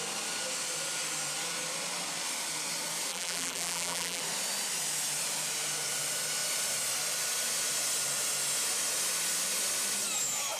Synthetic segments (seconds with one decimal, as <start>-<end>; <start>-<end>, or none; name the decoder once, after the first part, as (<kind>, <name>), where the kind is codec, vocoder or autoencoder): 3.1-4.2 (vocoder, BigVGAN v2)